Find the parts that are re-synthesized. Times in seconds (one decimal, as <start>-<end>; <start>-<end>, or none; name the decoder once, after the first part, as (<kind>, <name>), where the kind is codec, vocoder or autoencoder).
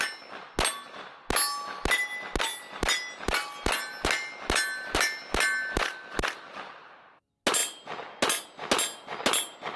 none